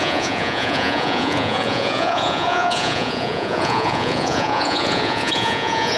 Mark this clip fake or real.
fake